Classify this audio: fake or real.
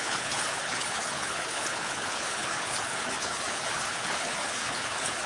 fake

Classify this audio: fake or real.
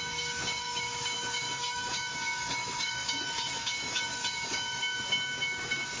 fake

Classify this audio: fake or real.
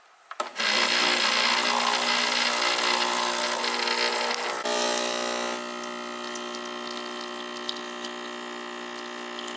real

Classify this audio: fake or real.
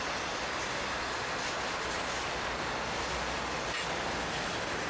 real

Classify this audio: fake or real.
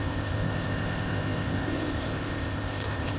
fake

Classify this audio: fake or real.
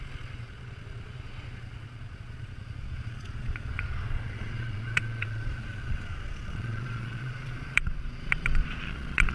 fake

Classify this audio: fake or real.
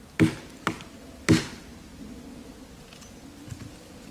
real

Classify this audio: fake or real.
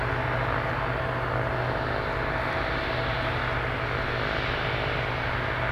real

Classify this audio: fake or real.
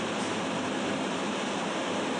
fake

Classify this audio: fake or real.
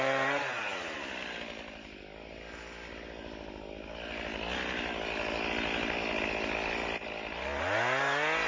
real